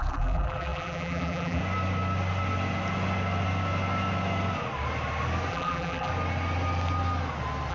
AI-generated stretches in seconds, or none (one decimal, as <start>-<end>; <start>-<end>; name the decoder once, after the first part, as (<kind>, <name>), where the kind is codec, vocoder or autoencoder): 0.0-1.6 (vocoder, BigVGAN v2); 5.5-6.1